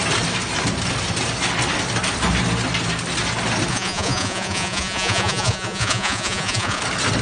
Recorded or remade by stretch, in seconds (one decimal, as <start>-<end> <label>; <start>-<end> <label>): 0.0-3.7 recorded; 3.7-6.8 remade; 6.8-7.2 recorded